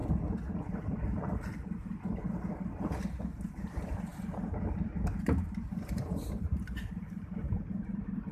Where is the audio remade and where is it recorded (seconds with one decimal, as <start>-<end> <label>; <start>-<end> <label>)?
0.0-2.5 recorded; 2.5-4.1 remade; 4.1-5.2 recorded; 5.2-8.3 remade